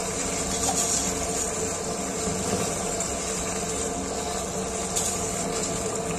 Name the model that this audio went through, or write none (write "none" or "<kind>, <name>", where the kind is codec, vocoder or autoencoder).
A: none